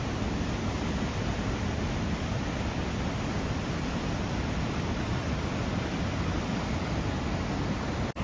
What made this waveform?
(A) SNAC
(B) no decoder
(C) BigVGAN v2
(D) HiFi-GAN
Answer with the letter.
B